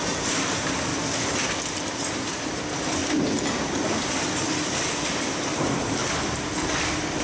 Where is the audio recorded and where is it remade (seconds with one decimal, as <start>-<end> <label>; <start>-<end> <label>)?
0.0-0.9 remade; 0.9-2.0 recorded; 2.0-3.0 remade; 3.0-4.4 recorded; 4.4-6.0 remade; 6.0-7.2 recorded

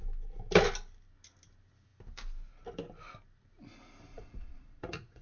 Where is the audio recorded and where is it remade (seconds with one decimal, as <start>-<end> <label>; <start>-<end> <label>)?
0.0-4.1 recorded; 4.1-5.2 remade

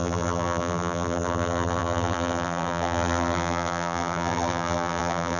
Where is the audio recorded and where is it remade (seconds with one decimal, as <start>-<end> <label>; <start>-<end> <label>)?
0.0-5.4 remade

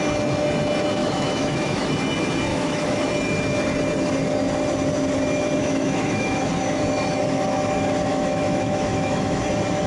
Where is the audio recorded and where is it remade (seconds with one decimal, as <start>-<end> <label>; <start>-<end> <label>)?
0.0-1.0 recorded; 1.0-1.9 remade; 1.9-2.5 recorded; 2.5-3.1 remade; 3.1-5.6 recorded; 5.6-6.5 remade; 6.5-8.1 recorded; 8.1-9.4 remade; 9.4-9.9 recorded

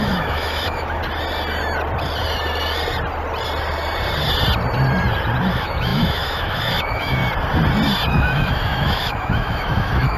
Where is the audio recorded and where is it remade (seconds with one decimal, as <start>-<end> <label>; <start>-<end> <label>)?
0.0-1.0 remade; 1.0-5.5 recorded; 5.5-7.2 remade; 7.2-8.1 recorded; 8.1-10.2 remade